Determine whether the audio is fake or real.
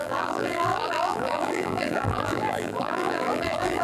fake